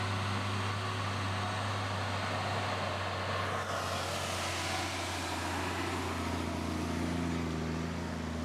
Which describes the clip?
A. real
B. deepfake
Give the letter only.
A